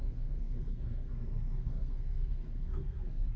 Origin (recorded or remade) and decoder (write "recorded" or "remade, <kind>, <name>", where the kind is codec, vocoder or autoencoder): remade, codec, SNAC